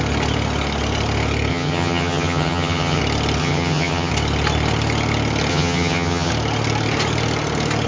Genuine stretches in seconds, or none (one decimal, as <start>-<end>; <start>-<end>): 0.0-1.5; 3.0-3.4; 4.1-5.5; 6.3-7.9